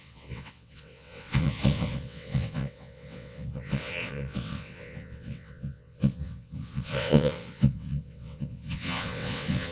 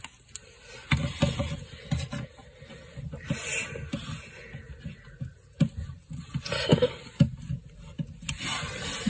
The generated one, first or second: first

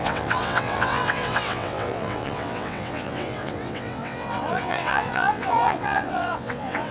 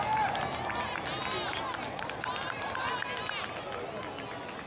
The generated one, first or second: first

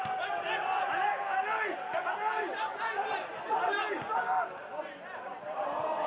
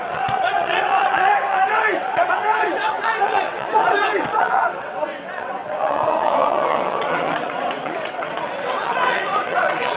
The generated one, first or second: second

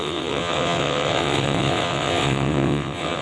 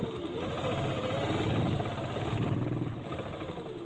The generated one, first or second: first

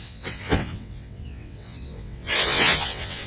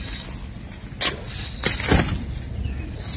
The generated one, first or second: first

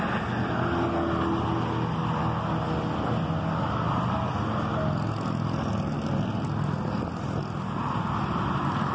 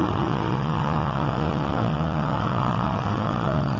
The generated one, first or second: second